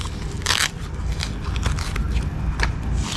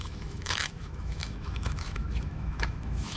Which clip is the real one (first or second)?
first